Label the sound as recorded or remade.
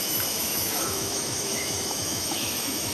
remade